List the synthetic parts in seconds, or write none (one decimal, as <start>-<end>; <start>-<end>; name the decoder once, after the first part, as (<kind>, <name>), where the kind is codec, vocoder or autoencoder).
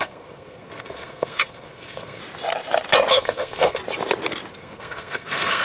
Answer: 0.0-2.2 (codec, SNAC); 3.1-3.8; 4.5-5.6